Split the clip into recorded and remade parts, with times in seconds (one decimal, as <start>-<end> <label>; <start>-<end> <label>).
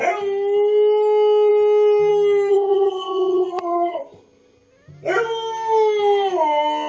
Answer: 0.0-2.5 recorded; 2.5-4.0 remade; 4.0-6.9 recorded